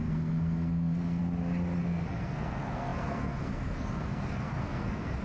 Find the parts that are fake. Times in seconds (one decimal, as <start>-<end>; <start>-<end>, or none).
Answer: 0.0-1.2; 1.8-5.2